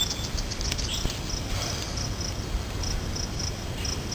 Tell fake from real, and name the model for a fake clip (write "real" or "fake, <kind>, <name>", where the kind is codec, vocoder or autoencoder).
real